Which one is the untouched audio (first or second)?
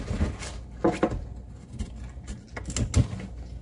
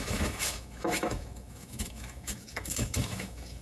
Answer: first